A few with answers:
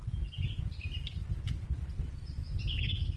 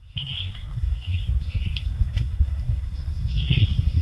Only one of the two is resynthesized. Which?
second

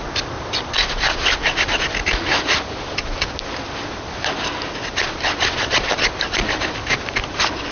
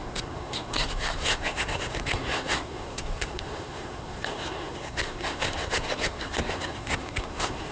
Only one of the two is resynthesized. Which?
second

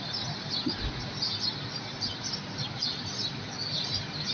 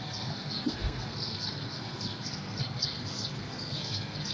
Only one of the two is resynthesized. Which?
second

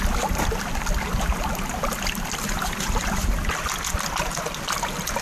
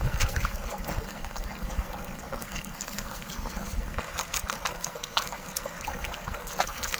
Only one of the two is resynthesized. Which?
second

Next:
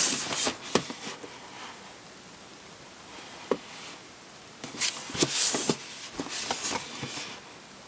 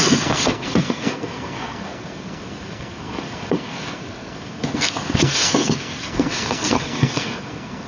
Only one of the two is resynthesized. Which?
second